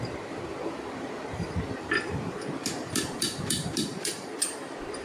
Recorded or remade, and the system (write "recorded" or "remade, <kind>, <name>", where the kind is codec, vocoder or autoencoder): remade, vocoder, BigVGAN v2